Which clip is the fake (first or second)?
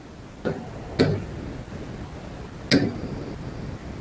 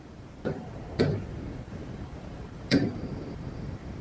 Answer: second